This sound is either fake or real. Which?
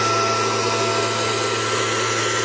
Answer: real